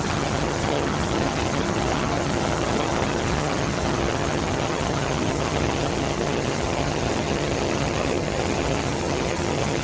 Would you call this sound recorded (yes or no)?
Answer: no